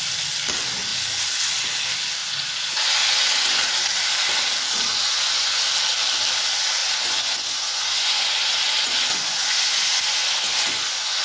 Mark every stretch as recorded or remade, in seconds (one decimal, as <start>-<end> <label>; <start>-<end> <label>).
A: 0.0-2.2 recorded; 2.2-3.7 remade; 3.7-4.9 recorded; 4.9-5.6 remade; 5.6-6.8 recorded; 6.8-11.2 remade